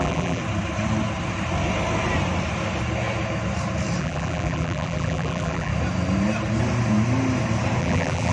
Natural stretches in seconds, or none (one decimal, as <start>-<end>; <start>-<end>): 0.4-4.0; 5.7-7.8